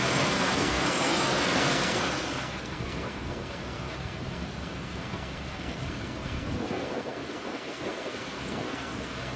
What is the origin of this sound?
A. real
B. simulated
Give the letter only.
B